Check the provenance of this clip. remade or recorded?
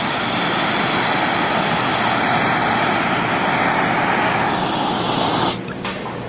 recorded